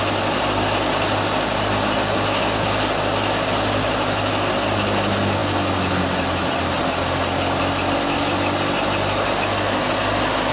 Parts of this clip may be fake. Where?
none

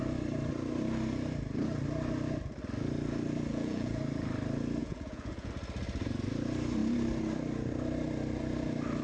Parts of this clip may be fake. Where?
3.5-4.0; 4.8-5.5